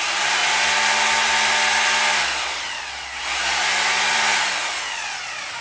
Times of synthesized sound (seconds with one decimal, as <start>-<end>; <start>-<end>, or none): none